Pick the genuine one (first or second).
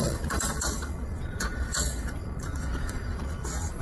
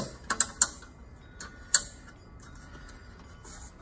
second